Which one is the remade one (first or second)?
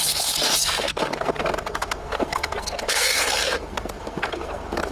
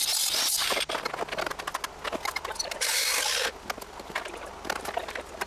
first